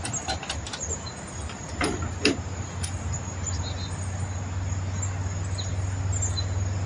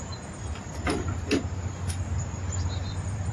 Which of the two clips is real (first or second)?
first